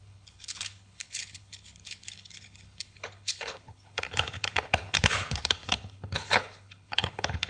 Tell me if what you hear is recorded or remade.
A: remade